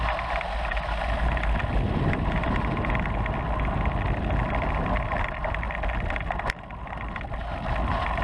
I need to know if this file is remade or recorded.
recorded